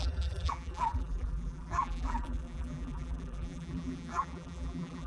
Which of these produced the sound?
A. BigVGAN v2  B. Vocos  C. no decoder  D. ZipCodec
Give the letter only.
A